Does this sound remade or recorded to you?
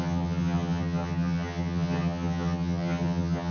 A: remade